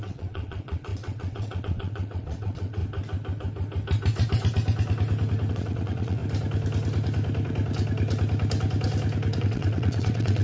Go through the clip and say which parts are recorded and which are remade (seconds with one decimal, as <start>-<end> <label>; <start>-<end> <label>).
0.0-2.8 remade; 2.8-5.5 recorded; 5.5-6.2 remade; 6.2-9.4 recorded; 9.4-10.4 remade